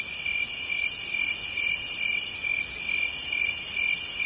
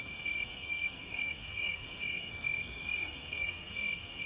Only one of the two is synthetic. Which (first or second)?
second